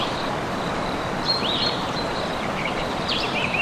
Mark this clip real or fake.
fake